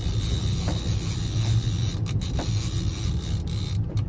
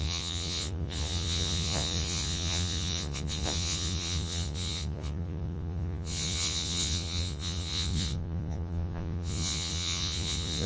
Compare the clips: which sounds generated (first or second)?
second